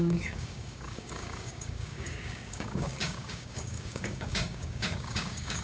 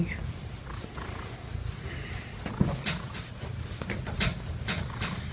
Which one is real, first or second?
second